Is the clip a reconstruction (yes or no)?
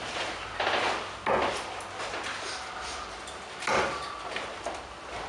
no